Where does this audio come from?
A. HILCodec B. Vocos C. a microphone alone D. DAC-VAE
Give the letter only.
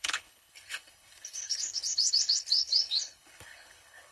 A